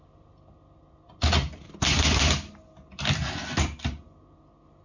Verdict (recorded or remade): recorded